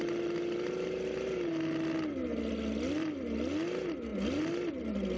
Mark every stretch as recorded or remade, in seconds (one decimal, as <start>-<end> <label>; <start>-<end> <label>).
0.0-5.2 recorded